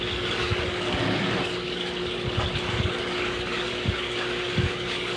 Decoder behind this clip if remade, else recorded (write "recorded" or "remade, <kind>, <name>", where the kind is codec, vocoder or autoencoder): remade, codec, DAC